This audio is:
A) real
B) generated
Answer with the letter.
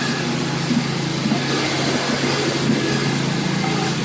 A